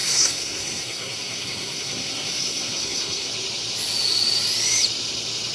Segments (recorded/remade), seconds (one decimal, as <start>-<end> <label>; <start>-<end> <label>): 0.0-3.3 remade; 3.3-5.5 recorded